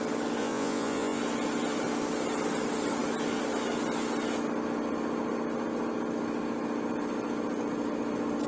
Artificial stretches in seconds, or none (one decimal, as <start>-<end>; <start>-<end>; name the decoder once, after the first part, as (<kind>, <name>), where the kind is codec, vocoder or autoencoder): 0.4-1.2 (vocoder, Vocos)